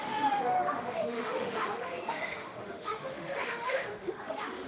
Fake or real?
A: fake